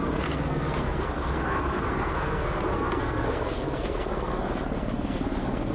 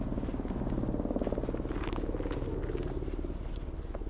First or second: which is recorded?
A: second